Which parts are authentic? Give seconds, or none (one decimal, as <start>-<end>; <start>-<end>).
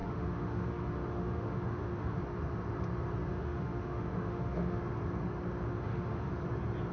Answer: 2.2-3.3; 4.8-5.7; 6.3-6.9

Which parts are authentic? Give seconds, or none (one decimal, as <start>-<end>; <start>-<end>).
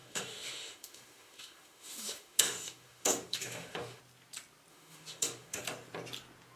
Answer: 4.0-4.7; 5.6-6.6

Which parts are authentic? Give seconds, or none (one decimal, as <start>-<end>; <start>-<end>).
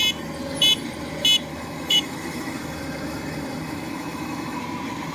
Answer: 0.0-1.5; 4.6-5.1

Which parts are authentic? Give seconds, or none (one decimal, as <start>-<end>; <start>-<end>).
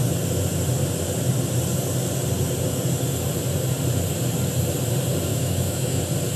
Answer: 0.0-5.3; 6.0-6.4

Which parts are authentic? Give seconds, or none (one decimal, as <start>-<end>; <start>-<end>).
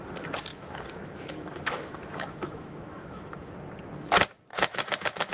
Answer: 0.0-0.5; 3.5-4.5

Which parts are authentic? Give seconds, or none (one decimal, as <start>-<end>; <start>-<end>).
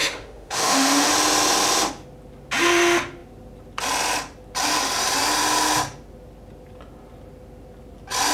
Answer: 1.1-8.3